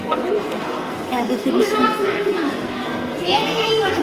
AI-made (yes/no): yes